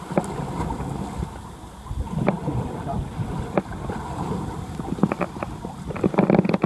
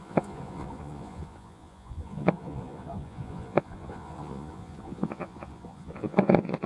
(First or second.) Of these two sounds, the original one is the first